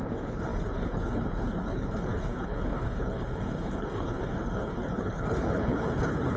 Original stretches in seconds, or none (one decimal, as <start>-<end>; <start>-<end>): none